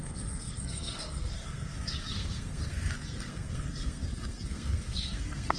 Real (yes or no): no